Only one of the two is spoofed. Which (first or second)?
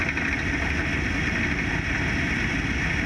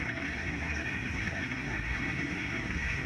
second